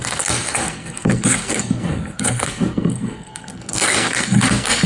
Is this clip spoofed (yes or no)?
yes